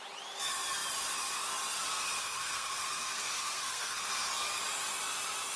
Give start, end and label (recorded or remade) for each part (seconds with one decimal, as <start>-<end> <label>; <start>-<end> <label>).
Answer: 0.0-2.2 recorded; 2.2-4.1 remade; 4.1-5.6 recorded